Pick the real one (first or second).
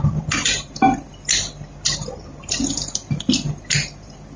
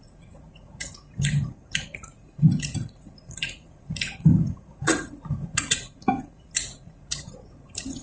first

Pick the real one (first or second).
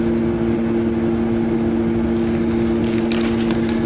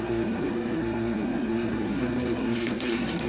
first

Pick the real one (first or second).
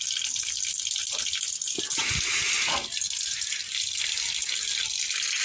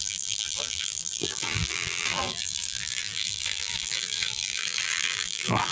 first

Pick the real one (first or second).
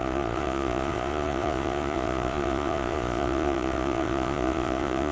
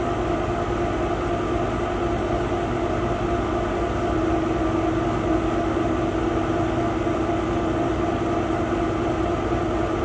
second